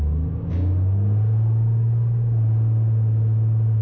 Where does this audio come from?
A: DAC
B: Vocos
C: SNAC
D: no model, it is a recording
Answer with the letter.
D